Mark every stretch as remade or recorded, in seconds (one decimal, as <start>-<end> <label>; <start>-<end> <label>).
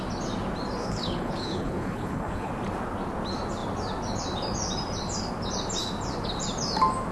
0.0-0.8 recorded; 0.8-2.5 remade; 2.5-7.1 recorded